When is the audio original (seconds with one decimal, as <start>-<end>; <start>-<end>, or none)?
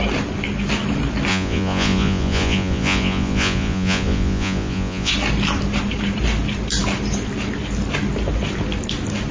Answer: 0.0-1.3; 5.1-9.3